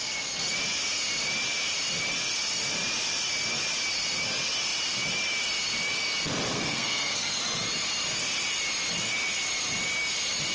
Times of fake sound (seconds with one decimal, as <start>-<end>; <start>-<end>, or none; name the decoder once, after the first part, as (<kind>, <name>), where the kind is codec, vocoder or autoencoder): 6.5-7.4 (codec, SNAC)